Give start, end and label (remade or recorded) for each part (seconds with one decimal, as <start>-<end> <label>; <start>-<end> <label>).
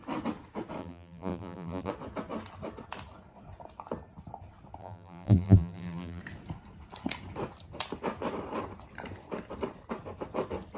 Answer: 0.0-0.8 recorded; 0.8-1.9 remade; 1.9-4.8 recorded; 4.8-6.2 remade; 6.2-10.8 recorded